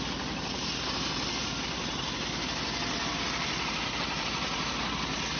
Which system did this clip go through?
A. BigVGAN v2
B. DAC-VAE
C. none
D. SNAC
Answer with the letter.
C